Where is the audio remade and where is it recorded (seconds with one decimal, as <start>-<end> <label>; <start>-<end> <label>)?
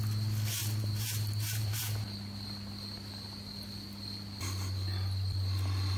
0.0-0.6 recorded; 0.6-1.8 remade; 1.8-6.0 recorded